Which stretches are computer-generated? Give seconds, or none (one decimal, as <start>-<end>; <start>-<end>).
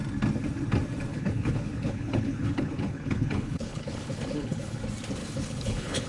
1.1-4.8; 5.2-6.1